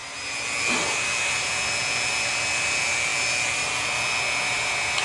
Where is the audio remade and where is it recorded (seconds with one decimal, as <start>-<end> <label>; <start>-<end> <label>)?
0.0-5.0 recorded